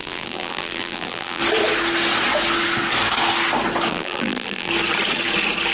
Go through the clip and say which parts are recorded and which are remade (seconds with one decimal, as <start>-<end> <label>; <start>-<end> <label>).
0.0-1.4 remade; 1.4-3.9 recorded; 3.9-4.7 remade; 4.7-5.7 recorded